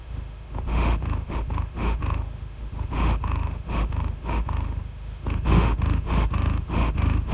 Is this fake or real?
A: fake